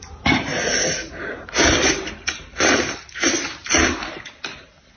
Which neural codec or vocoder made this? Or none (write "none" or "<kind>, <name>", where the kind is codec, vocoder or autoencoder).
none